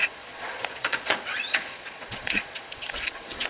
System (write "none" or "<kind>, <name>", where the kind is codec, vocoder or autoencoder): vocoder, Vocos